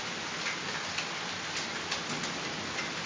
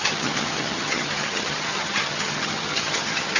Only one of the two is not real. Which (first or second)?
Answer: second